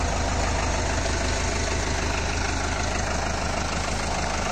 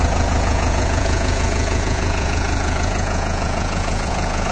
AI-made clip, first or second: second